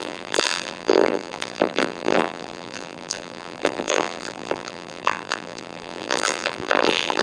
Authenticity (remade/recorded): remade